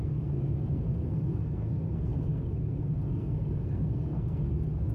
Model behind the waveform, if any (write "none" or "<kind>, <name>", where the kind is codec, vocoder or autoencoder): codec, SNAC